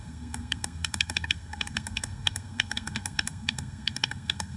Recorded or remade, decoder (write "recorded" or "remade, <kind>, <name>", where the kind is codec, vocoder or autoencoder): remade, codec, SNAC